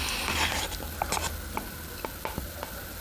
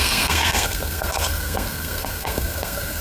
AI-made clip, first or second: second